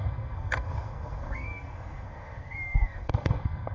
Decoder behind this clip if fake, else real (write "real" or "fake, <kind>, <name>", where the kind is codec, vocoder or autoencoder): fake, codec, SNAC